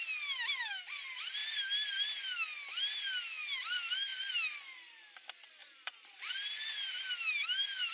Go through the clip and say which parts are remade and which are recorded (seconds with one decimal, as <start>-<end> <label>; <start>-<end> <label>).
0.0-5.6 recorded; 5.6-6.3 remade; 6.3-7.9 recorded